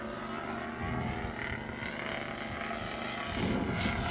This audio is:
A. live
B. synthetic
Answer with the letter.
A